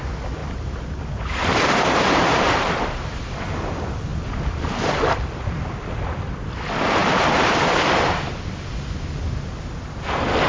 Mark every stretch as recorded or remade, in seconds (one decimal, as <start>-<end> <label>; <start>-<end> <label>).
0.0-0.4 recorded; 0.4-3.2 remade; 3.2-10.5 recorded